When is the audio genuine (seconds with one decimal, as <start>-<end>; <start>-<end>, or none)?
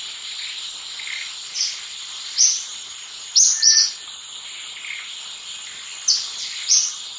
0.0-2.7; 3.9-7.2